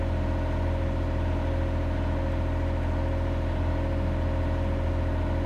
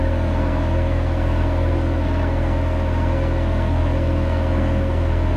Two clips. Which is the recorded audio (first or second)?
first